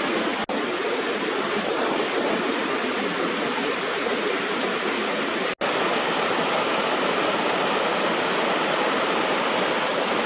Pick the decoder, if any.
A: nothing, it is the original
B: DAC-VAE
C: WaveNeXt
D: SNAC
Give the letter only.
A